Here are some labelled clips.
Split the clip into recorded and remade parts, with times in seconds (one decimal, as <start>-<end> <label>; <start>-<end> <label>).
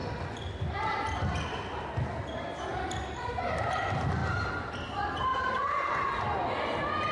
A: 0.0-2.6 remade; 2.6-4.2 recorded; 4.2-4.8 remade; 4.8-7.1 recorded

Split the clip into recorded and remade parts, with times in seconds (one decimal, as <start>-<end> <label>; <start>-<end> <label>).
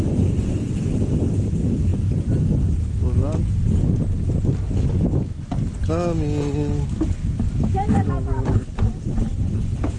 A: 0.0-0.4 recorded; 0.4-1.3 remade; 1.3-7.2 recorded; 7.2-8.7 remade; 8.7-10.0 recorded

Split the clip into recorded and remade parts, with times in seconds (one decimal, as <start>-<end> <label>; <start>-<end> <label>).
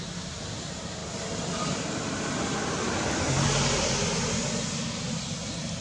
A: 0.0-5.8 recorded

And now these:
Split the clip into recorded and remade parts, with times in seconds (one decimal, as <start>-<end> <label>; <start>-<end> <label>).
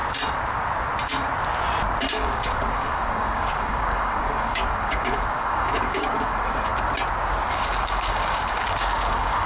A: 0.0-2.1 recorded; 2.1-6.7 remade; 6.7-7.5 recorded; 7.5-9.5 remade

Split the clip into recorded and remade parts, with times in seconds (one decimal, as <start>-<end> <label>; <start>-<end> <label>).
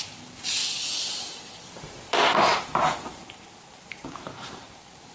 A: 0.0-2.5 recorded; 2.5-5.1 remade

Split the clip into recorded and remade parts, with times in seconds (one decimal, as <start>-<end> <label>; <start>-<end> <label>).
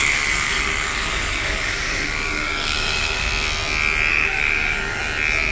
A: 0.0-3.3 remade; 3.3-4.1 recorded; 4.1-5.0 remade; 5.0-5.5 recorded